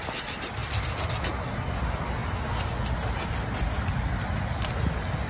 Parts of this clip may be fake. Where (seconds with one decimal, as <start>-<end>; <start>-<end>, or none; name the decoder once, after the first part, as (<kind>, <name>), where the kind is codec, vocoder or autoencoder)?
0.6-1.1 (vocoder, BigVGAN v2)